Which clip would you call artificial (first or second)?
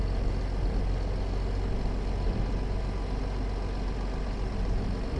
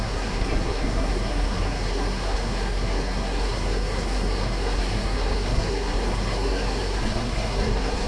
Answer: second